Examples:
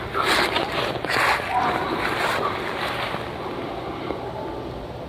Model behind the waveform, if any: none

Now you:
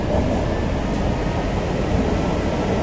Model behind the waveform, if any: none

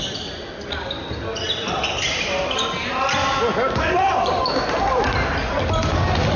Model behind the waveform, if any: none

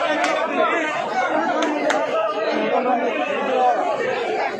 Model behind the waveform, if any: none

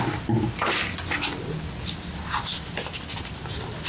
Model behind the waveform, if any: none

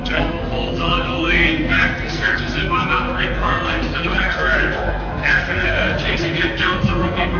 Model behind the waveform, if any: codec, SNAC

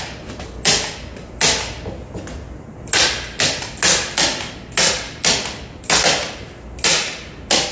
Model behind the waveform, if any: none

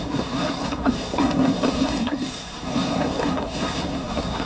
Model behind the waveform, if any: codec, SNAC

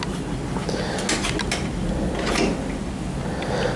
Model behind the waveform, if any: none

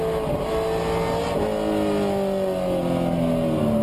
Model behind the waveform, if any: none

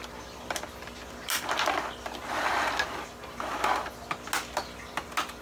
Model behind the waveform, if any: none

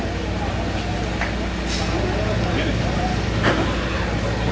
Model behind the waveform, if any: none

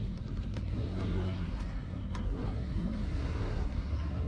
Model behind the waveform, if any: codec, SNAC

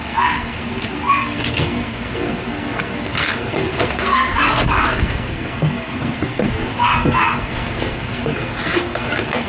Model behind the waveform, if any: codec, SNAC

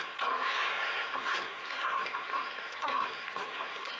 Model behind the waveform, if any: codec, SNAC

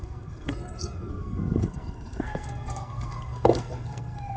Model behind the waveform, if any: codec, SNAC